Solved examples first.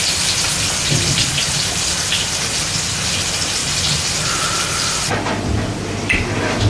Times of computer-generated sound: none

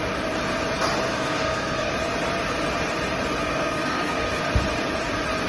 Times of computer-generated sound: 1.1-1.9; 3.4-4.4